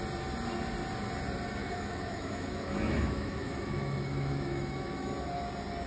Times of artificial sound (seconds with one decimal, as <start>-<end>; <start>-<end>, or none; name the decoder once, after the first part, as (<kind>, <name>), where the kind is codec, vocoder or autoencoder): 1.6-5.1 (autoencoder, DAC-VAE)